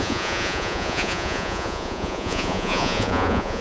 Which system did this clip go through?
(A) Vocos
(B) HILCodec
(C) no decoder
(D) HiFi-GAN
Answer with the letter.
A